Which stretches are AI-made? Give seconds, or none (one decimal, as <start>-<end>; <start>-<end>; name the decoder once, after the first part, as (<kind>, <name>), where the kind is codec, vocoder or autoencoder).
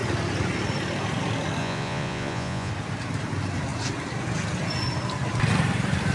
1.6-2.7 (vocoder, Vocos)